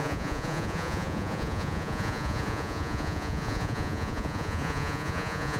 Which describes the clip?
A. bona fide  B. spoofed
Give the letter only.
B